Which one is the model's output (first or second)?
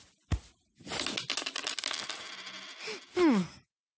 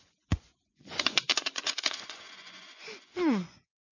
second